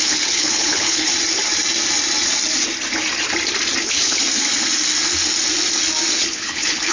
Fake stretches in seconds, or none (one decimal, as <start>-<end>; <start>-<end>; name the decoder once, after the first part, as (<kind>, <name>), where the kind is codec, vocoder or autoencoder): 0.0-1.1 (codec, HILCodec); 3.8-4.2; 6.2-6.9